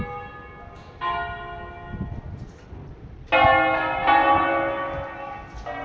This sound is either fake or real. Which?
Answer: real